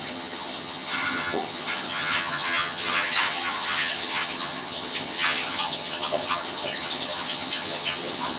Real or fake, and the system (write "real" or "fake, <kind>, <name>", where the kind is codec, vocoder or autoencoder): fake, vocoder, HiFi-GAN